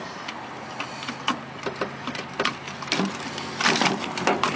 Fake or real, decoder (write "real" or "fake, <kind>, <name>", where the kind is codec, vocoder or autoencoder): real